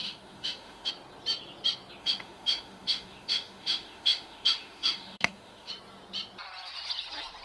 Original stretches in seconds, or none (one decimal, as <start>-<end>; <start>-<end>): 0.9-2.0; 5.7-7.4